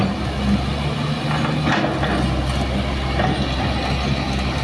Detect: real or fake real